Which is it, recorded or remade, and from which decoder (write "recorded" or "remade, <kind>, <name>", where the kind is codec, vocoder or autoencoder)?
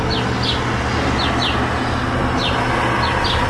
recorded